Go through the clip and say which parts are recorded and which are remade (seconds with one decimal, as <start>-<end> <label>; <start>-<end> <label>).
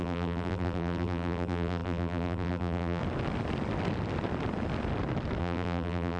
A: 0.0-3.0 remade; 3.0-5.4 recorded; 5.4-6.2 remade